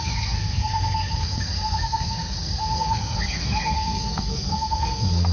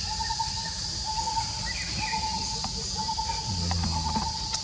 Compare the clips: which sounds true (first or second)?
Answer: second